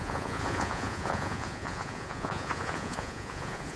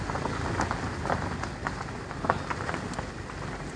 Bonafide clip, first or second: second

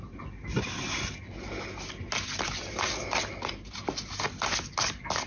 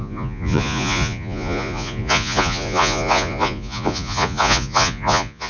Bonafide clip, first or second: first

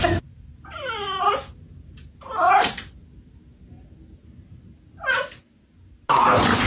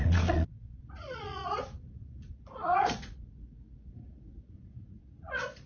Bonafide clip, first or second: first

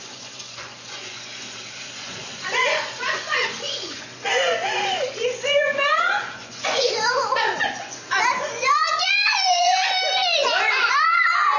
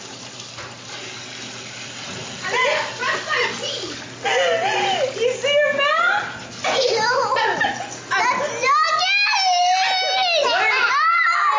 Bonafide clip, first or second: second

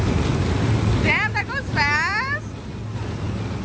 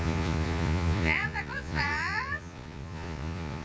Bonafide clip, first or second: first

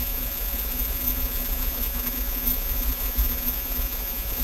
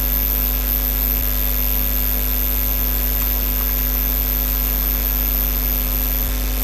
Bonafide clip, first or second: second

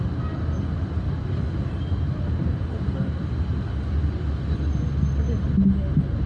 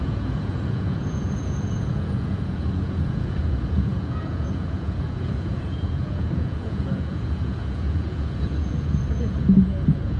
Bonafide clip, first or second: first